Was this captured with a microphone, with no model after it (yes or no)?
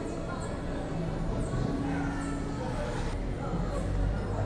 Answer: yes